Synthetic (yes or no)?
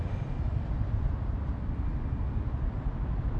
no